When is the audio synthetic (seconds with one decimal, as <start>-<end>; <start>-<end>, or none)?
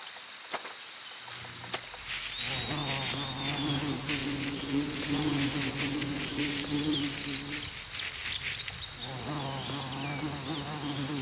4.2-6.4